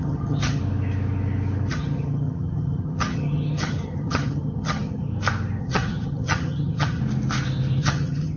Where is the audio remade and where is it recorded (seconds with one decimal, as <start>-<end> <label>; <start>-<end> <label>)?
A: 0.0-0.6 remade; 0.6-1.7 recorded; 1.7-5.1 remade; 5.1-5.6 recorded; 5.6-7.0 remade; 7.0-7.8 recorded; 7.8-8.4 remade